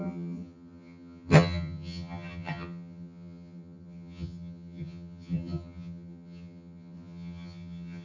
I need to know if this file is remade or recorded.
remade